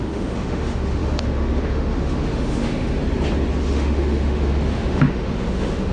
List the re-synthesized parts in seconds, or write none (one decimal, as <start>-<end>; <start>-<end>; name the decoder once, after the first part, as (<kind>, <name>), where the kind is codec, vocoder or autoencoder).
0.0-3.0 (autoencoder, DAC-VAE); 3.6-5.9